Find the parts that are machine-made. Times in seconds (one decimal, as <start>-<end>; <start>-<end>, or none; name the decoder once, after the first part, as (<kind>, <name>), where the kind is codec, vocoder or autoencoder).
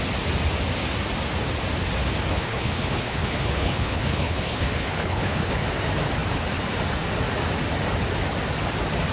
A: 2.3-5.5 (codec, HILCodec)